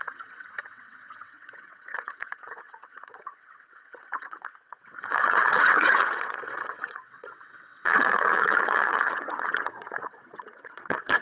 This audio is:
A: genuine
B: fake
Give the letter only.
B